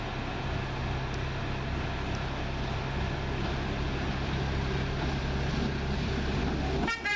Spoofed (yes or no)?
no